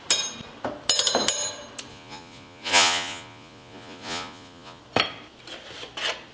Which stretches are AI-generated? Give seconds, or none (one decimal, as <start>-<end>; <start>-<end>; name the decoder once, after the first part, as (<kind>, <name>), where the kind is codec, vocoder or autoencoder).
1.9-4.8 (vocoder, Vocos)